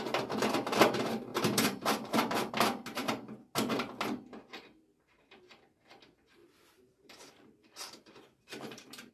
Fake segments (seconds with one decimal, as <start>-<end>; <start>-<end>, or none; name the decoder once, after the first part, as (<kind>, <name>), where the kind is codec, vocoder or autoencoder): 1.3-2.5 (vocoder, BigVGAN v2); 6.4-9.1